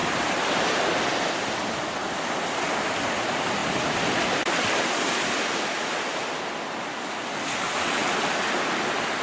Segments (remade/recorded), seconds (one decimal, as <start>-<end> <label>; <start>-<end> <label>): 0.0-0.7 remade; 0.7-3.6 recorded; 3.6-6.9 remade; 6.9-8.0 recorded; 8.0-9.2 remade